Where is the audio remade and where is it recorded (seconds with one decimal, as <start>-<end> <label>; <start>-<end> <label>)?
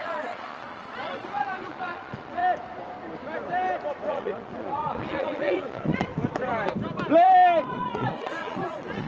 0.0-2.4 remade; 2.4-4.1 recorded; 4.1-6.1 remade; 6.1-7.6 recorded; 7.6-9.1 remade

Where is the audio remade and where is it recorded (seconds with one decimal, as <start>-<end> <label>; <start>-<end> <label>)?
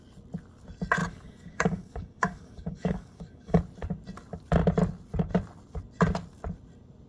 0.0-1.0 recorded; 1.0-3.6 remade; 3.6-7.1 recorded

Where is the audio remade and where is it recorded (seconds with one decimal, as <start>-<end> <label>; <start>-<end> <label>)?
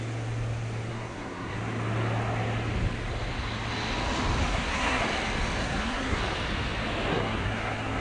0.0-0.9 recorded; 0.9-1.6 remade; 1.6-4.5 recorded; 4.5-5.0 remade; 5.0-5.6 recorded; 5.6-6.2 remade; 6.2-7.1 recorded; 7.1-8.0 remade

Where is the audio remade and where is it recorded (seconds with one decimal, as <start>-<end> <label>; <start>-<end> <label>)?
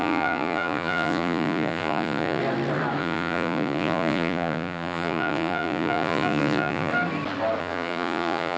0.0-2.4 remade; 2.4-3.0 recorded; 3.0-6.9 remade; 6.9-7.6 recorded; 7.6-8.6 remade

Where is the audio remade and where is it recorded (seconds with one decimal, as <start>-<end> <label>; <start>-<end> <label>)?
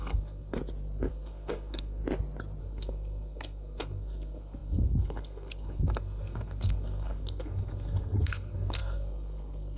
0.0-0.6 remade; 0.6-1.1 recorded; 1.1-2.0 remade; 2.0-2.6 recorded; 2.6-9.8 remade